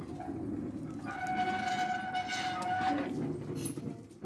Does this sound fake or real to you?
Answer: real